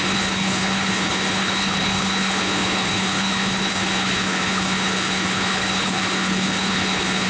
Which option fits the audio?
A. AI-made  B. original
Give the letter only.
A